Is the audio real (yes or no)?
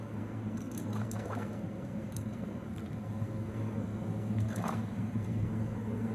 no